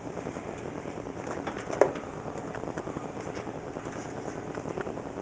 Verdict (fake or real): real